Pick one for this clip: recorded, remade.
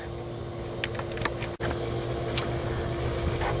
recorded